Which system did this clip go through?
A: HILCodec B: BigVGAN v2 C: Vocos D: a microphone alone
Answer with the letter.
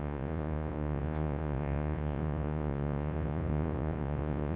C